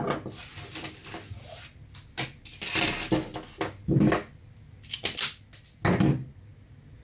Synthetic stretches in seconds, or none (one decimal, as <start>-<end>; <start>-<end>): none